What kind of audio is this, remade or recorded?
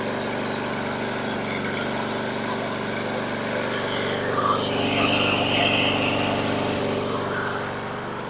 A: recorded